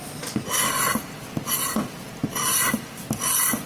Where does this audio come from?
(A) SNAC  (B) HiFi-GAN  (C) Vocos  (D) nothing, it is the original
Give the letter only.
D